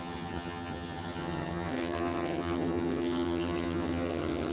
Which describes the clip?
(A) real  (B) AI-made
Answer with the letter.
B